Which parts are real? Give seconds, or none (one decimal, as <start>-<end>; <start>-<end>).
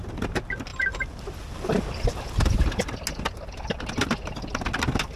0.0-5.2